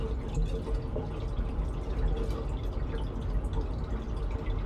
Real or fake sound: real